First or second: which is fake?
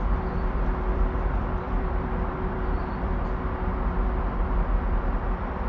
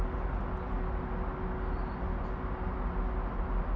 first